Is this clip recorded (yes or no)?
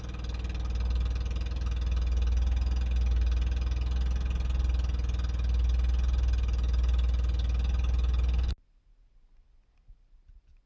yes